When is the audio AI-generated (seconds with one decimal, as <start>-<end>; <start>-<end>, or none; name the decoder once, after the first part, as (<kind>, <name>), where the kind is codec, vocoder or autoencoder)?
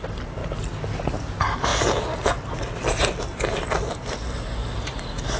none